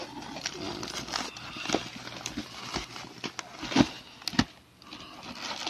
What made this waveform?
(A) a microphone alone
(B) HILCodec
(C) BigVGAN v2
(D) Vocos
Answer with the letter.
A